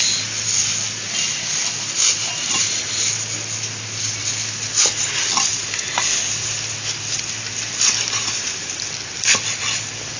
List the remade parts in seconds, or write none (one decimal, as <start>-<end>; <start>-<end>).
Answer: none